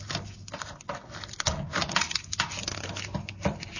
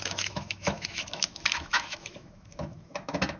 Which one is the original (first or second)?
first